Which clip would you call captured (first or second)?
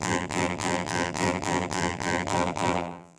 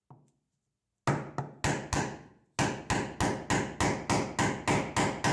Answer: second